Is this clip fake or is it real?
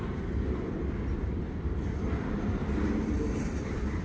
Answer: real